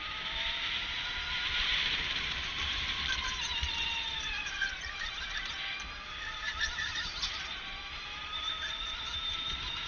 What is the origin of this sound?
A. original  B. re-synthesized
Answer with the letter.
B